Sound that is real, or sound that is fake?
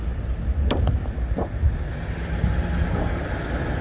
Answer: real